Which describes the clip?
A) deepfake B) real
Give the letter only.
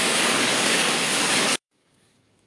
A